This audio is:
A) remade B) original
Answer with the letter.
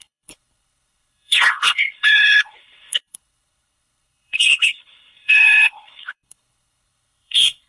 A